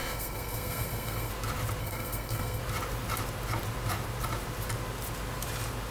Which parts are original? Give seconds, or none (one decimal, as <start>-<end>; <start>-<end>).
1.3-1.8; 2.6-5.9